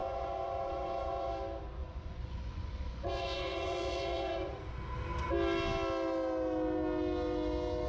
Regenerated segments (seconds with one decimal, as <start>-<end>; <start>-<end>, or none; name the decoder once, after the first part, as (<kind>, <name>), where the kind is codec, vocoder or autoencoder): 0.0-1.3 (vocoder, Vocos); 1.8-4.7